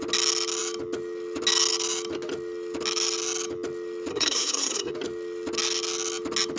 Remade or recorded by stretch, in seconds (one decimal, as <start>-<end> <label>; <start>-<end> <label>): 0.0-4.1 recorded; 4.1-4.9 remade; 4.9-6.6 recorded